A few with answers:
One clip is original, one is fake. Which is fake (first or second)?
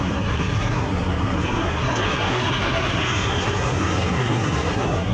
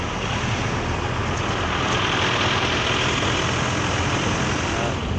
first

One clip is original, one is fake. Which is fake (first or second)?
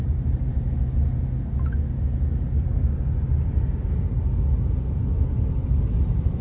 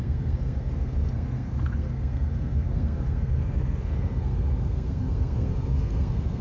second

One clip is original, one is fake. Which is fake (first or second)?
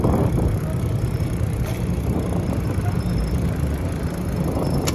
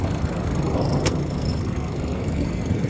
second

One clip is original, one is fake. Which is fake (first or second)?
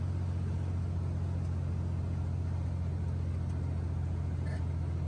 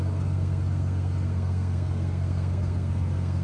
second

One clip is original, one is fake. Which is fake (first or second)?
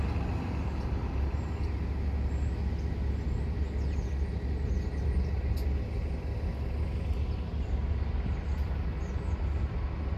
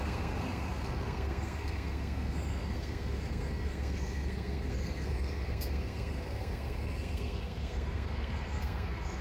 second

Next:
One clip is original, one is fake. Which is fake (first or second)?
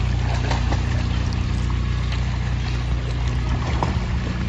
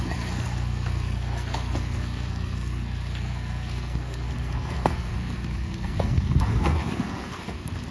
second